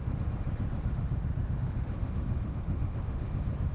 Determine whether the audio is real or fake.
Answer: fake